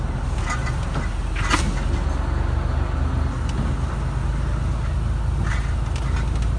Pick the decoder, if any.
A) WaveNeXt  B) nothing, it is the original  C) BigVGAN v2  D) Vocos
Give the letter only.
B